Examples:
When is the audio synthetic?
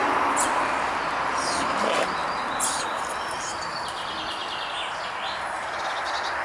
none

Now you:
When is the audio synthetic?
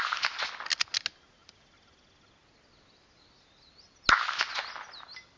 none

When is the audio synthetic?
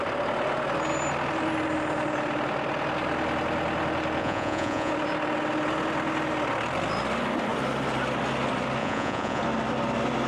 4.2-4.9 (vocoder, Vocos); 8.8-9.4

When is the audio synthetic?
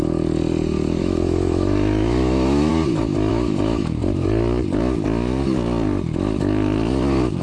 1.0-2.7 (autoencoder, DAC-VAE); 3.3-4.0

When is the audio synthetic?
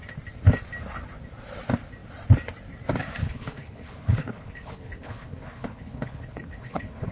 3.2-7.1 (codec, HILCodec)